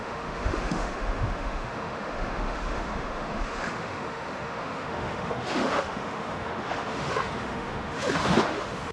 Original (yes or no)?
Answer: no